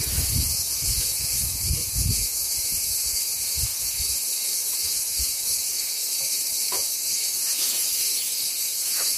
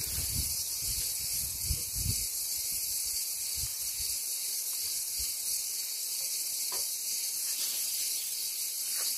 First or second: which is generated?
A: first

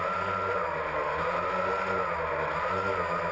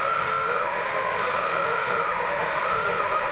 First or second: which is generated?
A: second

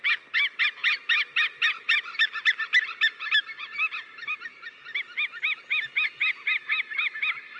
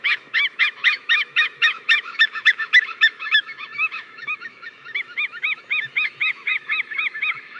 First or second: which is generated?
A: second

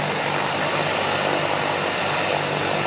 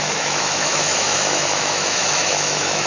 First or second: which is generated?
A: second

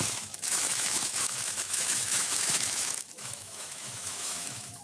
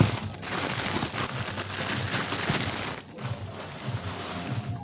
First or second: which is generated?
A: first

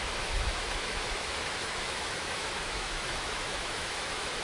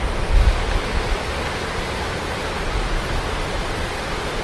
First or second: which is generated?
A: first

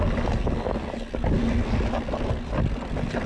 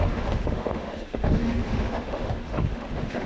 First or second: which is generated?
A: second